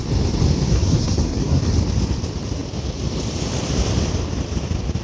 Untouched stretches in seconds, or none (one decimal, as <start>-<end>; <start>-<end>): 0.0-0.7; 1.6-5.0